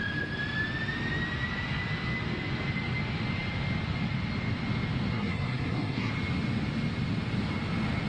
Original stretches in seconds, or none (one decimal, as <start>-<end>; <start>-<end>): 0.0-5.1; 6.1-8.1